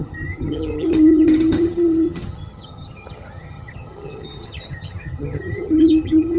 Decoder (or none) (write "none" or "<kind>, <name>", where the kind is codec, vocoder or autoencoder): vocoder, HiFi-GAN